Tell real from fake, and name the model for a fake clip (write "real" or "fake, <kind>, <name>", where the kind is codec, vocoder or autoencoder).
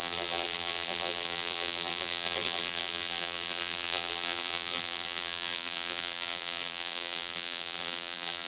fake, vocoder, BigVGAN v2